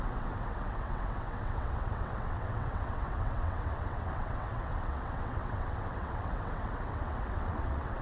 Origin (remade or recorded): remade